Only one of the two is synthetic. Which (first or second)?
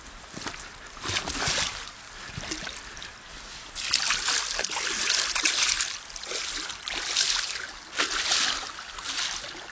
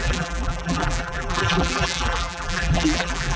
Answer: second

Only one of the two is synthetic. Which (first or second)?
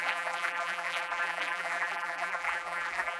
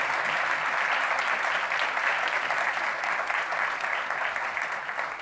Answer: first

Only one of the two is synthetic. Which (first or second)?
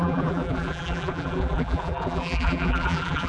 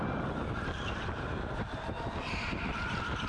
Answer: first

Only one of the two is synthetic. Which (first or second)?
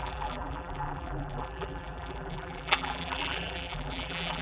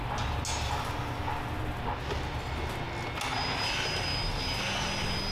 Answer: first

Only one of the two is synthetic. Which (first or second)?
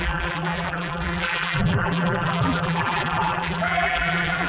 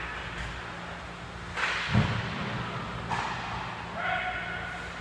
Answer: first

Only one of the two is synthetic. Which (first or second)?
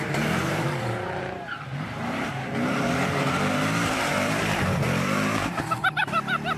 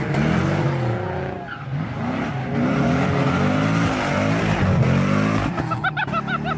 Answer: first